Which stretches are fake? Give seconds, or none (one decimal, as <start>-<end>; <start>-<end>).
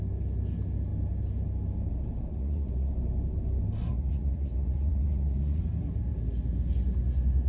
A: 2.3-2.9; 3.9-5.6